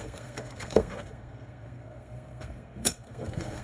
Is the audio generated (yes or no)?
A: yes